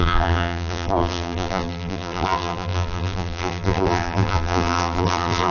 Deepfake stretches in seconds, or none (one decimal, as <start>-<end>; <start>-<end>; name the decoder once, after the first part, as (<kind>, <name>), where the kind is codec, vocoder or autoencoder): 0.0-5.5 (vocoder, BigVGAN v2)